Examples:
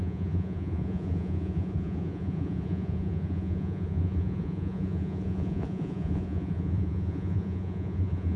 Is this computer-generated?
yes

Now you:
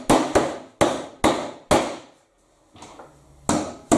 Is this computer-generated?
no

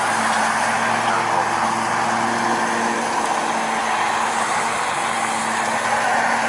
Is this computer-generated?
no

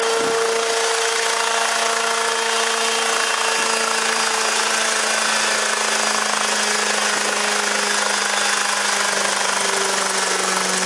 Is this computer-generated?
no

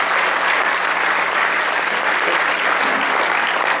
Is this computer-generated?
no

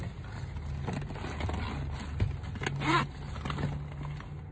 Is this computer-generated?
no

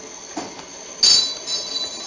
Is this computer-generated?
no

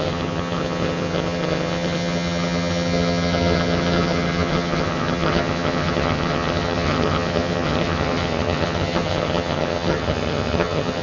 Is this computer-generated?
yes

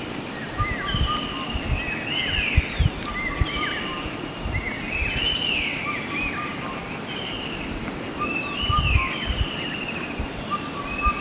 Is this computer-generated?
no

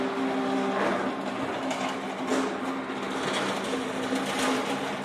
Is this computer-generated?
no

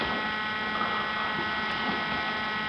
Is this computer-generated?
no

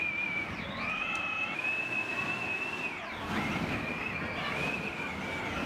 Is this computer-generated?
no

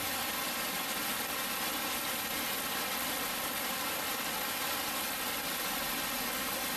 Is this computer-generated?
no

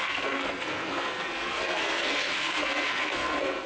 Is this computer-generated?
yes